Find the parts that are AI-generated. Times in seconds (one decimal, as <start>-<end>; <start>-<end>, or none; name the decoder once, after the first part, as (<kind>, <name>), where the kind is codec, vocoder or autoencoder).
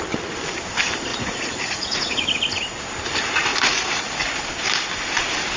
1.1-2.2 (vocoder, Vocos); 3.5-4.3